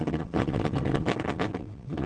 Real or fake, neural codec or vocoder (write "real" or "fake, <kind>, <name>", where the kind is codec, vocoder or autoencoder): fake, vocoder, WaveNeXt